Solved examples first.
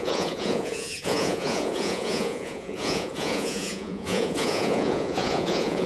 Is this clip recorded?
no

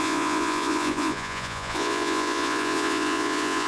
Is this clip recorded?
no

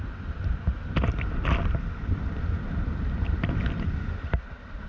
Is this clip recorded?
yes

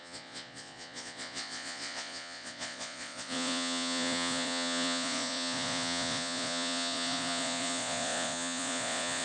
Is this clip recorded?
no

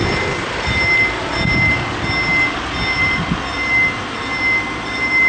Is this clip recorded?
yes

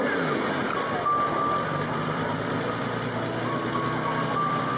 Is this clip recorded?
yes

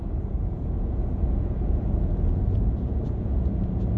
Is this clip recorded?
no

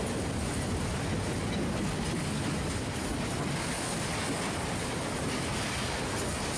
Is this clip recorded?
yes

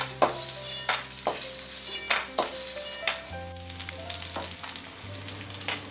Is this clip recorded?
yes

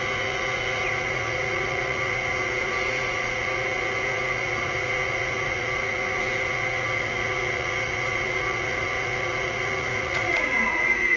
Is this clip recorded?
no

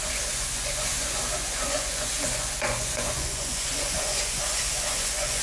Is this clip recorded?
no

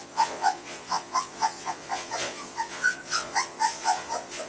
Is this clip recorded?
no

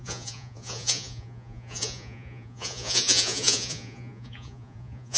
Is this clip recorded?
no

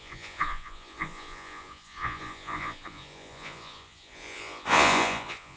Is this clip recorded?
no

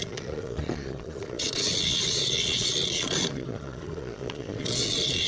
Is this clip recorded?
no